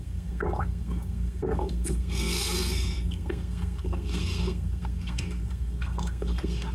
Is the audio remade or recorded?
remade